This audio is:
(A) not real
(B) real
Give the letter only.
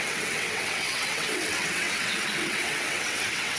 A